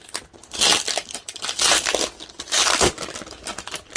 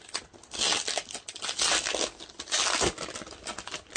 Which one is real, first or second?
second